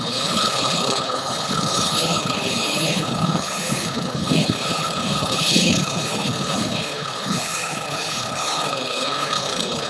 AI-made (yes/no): yes